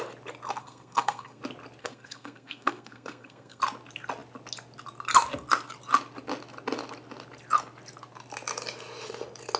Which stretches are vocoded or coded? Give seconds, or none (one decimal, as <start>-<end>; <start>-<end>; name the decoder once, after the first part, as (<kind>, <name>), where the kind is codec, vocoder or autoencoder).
0.6-1.4 (codec, SNAC); 1.8-3.6